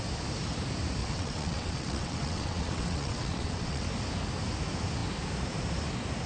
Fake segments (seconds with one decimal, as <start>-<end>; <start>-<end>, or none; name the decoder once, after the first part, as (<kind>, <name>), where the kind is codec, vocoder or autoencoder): 1.0-3.9 (vocoder, WaveNeXt)